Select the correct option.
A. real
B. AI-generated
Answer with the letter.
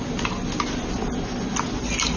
A